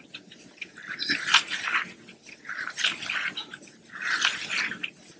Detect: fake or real real